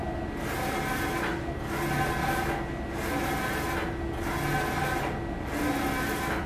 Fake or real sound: real